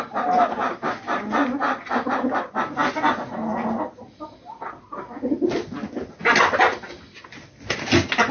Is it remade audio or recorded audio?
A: recorded